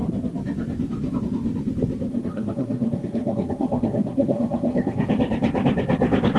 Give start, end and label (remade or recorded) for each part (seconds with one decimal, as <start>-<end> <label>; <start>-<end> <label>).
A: 0.0-2.1 recorded; 2.1-5.1 remade; 5.1-6.4 recorded